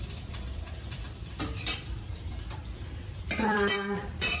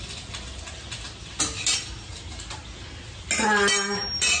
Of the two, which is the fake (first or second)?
first